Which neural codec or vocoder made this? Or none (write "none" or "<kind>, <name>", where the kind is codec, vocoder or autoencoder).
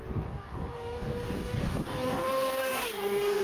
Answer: codec, DAC